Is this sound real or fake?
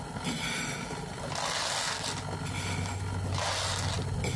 real